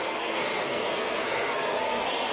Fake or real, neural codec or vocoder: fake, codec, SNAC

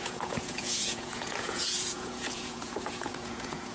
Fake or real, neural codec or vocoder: fake, vocoder, Vocos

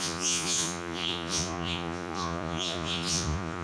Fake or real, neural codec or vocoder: fake, vocoder, Vocos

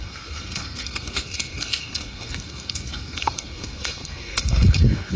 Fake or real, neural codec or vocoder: fake, codec, SNAC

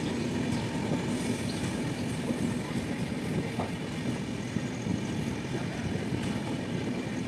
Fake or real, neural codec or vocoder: real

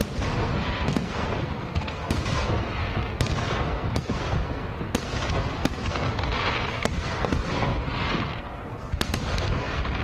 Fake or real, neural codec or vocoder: fake, codec, SNAC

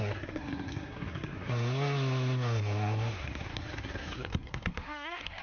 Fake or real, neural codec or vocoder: fake, codec, SNAC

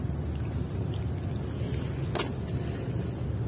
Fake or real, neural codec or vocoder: real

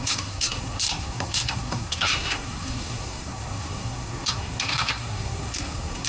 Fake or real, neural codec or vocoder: fake, codec, SNAC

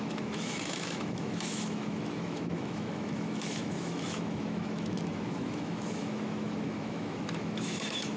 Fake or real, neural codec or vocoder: fake, autoencoder, DAC-VAE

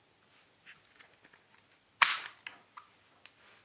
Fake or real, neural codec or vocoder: real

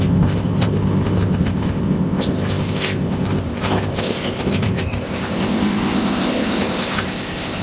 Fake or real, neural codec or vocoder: fake, codec, ZipCodec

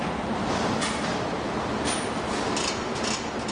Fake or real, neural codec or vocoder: fake, vocoder, BigVGAN v2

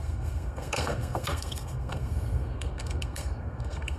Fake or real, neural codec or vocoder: fake, codec, SNAC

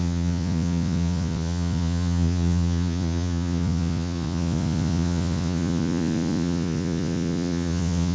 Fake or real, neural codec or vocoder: fake, vocoder, Vocos